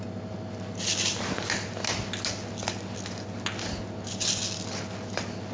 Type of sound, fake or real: real